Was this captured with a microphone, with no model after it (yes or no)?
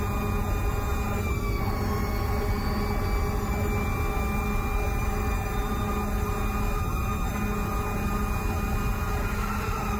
yes